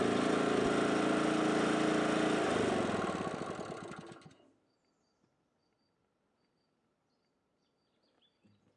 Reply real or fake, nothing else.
real